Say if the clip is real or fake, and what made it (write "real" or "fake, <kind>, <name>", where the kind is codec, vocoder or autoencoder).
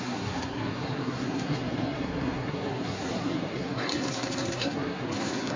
fake, codec, SNAC